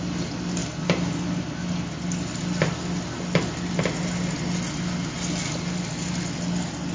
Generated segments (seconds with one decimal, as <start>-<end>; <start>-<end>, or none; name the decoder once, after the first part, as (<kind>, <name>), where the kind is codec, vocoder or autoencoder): none